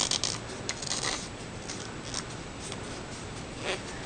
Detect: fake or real real